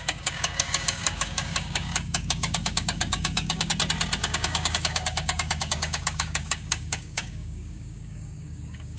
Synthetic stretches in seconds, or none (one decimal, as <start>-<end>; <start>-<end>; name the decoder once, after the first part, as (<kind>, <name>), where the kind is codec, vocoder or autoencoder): 0.0-3.7 (codec, DAC); 4.2-9.0